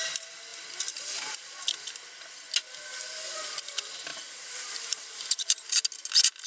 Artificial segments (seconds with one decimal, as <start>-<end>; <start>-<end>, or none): 4.1-5.7